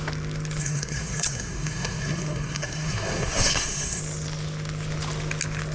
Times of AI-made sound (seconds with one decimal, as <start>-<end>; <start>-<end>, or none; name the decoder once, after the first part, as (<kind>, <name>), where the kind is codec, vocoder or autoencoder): 0.6-4.0 (codec, SNAC)